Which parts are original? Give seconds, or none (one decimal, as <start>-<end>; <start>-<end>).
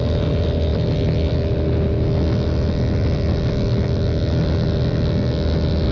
0.0-5.9